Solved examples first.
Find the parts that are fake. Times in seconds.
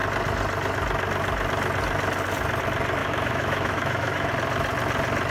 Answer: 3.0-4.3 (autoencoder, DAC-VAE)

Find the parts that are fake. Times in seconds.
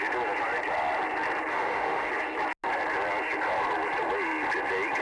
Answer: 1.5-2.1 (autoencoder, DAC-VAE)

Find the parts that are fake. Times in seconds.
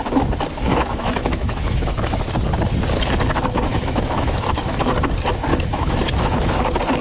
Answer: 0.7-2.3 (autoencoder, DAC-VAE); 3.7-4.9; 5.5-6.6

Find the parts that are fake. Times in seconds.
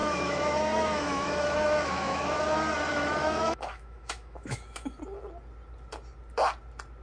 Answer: 0.0-2.4 (autoencoder, DAC-VAE); 2.9-5.0